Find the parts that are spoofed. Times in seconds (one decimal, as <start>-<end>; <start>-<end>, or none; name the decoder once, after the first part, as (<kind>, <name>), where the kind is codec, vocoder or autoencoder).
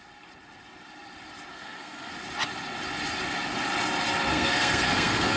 1.5-2.1 (codec, SNAC); 4.3-5.4